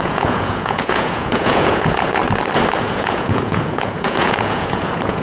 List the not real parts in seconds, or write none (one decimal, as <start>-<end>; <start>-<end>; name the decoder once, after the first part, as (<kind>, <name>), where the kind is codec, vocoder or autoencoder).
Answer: 0.0-2.2 (vocoder, Vocos); 2.8-5.2